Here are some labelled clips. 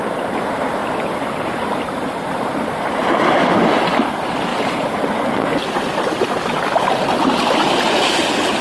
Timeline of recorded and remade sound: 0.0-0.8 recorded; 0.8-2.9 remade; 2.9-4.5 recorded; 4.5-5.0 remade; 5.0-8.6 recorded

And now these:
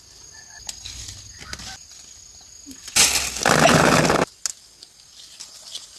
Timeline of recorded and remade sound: 0.0-6.0 recorded

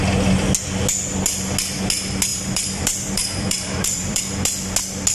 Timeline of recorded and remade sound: 0.0-2.3 recorded; 2.3-4.2 remade; 4.2-5.1 recorded

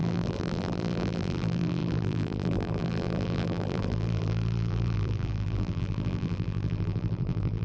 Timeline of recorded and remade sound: 0.0-7.6 remade

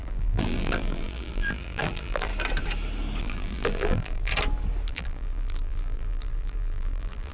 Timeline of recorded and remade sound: 0.0-2.3 remade; 2.3-3.2 recorded; 3.2-4.3 remade; 4.3-4.9 recorded; 4.9-7.3 remade

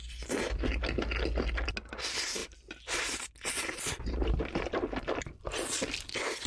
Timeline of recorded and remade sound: 0.0-2.4 recorded; 2.4-5.2 remade; 5.2-6.5 recorded

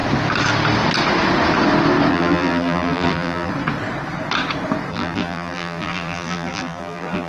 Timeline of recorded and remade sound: 0.0-2.1 recorded; 2.1-3.5 remade; 3.5-4.9 recorded; 4.9-7.3 remade

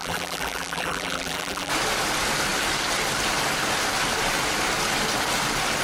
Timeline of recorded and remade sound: 0.0-1.7 remade; 1.7-5.8 recorded